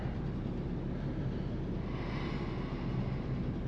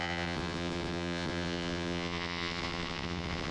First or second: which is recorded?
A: first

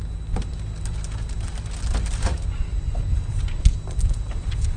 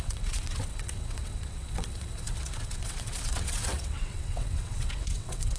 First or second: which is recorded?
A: first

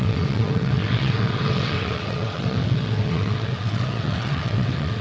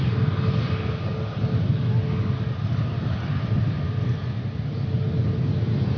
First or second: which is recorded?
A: second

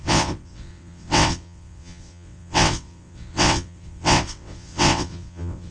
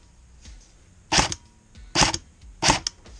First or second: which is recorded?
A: second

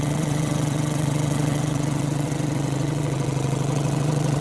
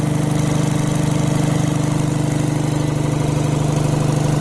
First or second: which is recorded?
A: second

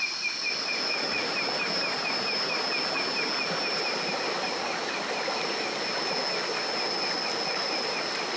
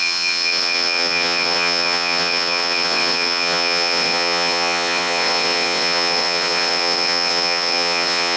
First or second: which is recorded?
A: first